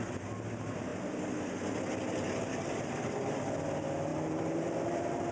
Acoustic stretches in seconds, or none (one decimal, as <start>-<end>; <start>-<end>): 0.0-4.1